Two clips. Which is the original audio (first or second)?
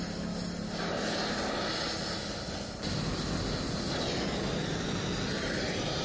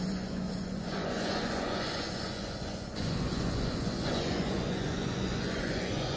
first